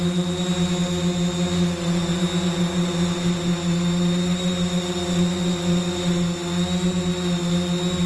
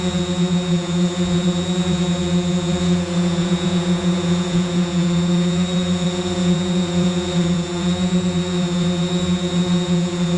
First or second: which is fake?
second